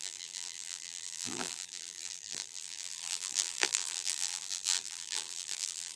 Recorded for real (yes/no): no